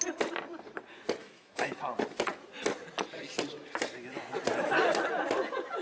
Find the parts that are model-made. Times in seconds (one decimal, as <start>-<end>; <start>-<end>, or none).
1.2-1.7